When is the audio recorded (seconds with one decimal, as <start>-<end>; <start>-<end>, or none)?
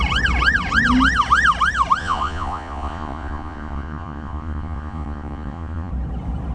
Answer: 0.0-2.0; 5.9-6.5